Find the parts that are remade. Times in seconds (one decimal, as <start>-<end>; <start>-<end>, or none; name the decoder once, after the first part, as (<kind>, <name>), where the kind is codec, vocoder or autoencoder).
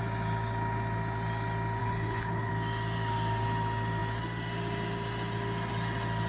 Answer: 1.8-2.5 (codec, HILCodec)